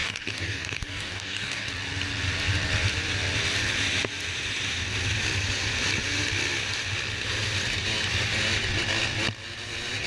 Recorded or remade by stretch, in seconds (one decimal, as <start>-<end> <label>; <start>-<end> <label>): 0.0-1.7 remade; 1.7-10.1 recorded